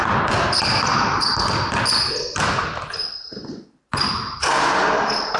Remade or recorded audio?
recorded